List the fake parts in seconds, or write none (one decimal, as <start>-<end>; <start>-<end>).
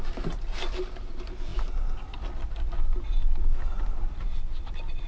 none